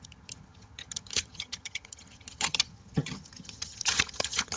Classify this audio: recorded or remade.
remade